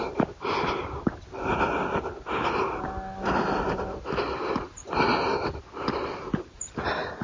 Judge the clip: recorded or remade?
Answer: recorded